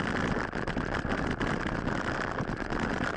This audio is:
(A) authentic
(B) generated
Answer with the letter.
A